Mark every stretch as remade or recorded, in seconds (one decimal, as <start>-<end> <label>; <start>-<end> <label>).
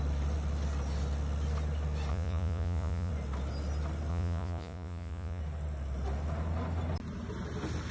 0.0-2.1 recorded; 2.1-3.1 remade; 3.1-4.1 recorded; 4.1-5.4 remade; 5.4-7.9 recorded